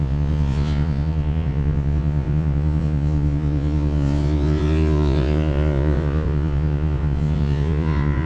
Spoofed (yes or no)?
yes